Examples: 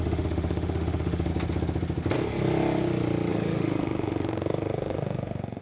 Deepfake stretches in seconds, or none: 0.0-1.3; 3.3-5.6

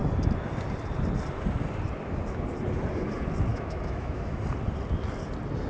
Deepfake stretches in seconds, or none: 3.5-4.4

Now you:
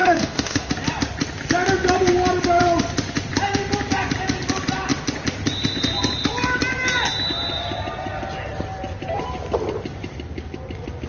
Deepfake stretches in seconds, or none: 0.0-0.7

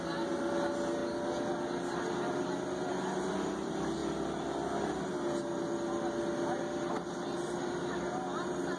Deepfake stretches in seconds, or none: none